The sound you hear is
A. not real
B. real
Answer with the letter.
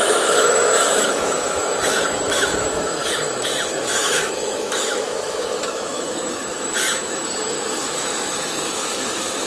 A